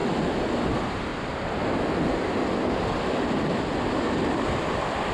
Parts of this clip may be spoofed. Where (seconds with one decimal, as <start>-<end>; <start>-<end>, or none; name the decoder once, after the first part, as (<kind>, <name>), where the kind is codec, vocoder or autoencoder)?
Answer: none

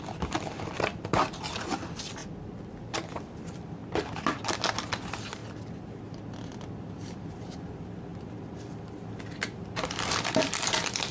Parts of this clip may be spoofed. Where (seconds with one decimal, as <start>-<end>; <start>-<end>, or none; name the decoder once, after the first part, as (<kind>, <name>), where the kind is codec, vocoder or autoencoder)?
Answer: 0.0-2.2 (vocoder, BigVGAN v2); 2.7-3.8; 4.9-5.4; 6.8-11.1